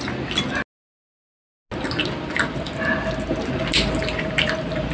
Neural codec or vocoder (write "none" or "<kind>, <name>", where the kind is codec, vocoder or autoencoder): none